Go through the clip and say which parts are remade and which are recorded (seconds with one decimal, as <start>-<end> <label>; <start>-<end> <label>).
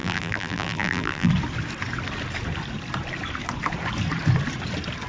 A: 0.0-1.3 remade; 1.3-5.1 recorded